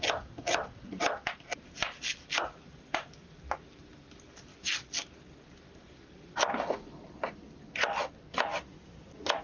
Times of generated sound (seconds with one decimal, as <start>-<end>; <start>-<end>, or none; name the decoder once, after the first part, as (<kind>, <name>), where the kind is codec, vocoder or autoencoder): none